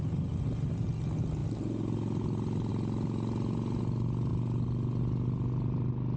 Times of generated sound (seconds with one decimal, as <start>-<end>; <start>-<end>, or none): none